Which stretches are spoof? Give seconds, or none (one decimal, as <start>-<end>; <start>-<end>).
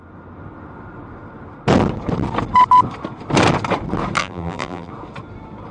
4.2-4.9